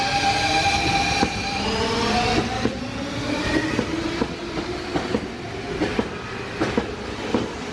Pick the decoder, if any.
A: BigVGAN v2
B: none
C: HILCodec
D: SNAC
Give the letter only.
B